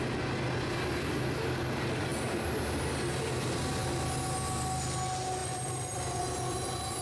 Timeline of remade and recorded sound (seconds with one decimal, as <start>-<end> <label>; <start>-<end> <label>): 0.0-5.4 recorded; 5.4-6.2 remade; 6.2-7.0 recorded